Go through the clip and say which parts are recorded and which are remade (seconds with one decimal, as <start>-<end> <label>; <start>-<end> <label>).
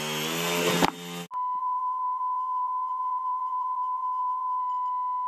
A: 0.0-1.6 recorded; 1.6-4.6 remade; 4.6-5.3 recorded